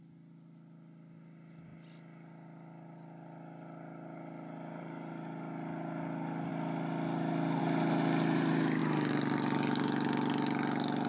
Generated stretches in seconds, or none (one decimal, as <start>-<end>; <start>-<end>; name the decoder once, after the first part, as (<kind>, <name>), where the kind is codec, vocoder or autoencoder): none